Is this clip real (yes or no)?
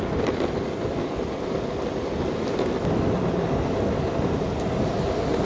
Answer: yes